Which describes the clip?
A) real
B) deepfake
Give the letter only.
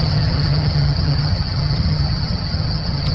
B